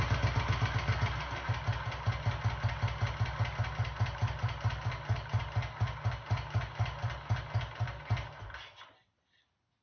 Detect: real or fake real